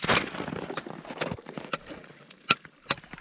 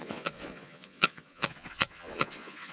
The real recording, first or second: first